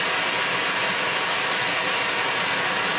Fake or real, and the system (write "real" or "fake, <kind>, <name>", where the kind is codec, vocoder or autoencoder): real